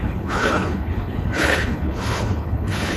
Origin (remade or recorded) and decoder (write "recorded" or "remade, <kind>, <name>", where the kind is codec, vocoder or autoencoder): remade, codec, HILCodec